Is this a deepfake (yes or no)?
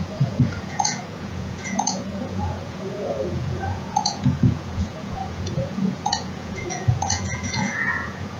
yes